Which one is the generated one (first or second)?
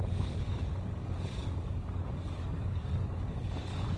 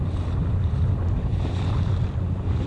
first